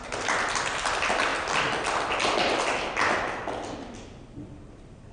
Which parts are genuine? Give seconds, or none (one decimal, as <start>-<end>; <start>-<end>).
0.0-5.1

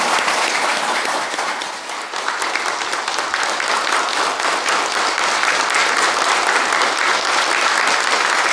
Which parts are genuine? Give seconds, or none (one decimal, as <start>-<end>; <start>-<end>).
0.0-8.5

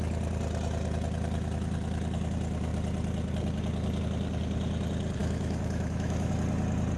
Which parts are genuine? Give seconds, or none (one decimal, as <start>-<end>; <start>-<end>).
0.0-5.2; 6.3-7.0

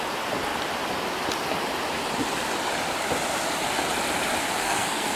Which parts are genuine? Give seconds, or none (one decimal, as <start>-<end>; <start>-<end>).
0.0-4.4

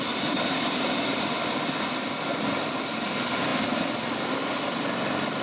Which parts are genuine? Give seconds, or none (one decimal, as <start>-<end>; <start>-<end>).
0.0-5.4

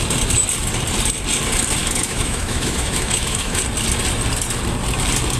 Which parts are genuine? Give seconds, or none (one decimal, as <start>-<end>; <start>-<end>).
0.0-1.8; 3.6-5.4